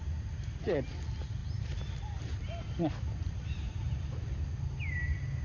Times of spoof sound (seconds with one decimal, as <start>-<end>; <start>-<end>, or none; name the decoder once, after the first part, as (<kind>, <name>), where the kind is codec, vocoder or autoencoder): 1.4-4.6 (vocoder, BigVGAN v2)